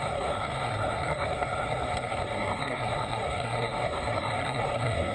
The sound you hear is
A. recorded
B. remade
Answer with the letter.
B